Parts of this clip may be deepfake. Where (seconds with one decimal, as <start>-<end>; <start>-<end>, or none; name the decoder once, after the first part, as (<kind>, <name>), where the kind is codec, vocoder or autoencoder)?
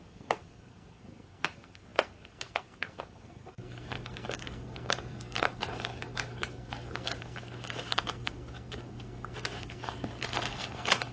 0.0-11.1 (codec, SNAC)